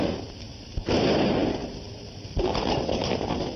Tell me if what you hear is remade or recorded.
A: recorded